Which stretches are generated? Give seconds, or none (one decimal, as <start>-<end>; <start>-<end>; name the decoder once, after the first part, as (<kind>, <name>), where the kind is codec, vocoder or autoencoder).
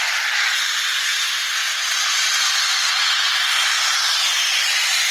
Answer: none